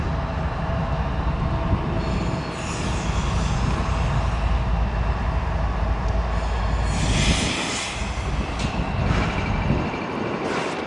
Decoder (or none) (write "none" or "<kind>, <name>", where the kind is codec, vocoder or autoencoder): none